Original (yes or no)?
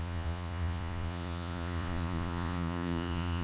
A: no